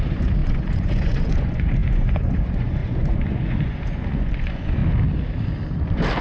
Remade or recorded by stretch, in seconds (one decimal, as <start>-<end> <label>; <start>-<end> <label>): 0.0-4.8 remade; 4.8-6.2 recorded